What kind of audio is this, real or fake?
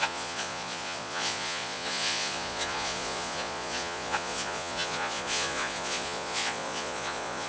fake